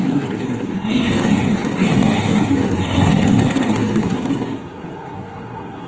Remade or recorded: remade